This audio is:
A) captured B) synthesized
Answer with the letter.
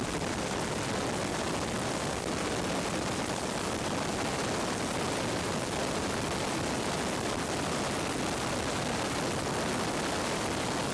A